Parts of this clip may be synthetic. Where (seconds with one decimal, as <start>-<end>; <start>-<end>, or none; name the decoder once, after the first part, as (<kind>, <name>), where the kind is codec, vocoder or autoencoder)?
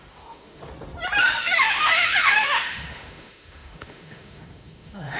0.0-0.6 (autoencoder, DAC-VAE); 1.2-5.2